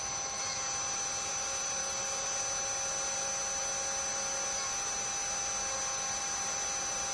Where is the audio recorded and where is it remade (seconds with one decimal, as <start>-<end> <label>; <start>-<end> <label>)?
0.0-7.1 recorded